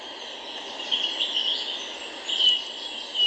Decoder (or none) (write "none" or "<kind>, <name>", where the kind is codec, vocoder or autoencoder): none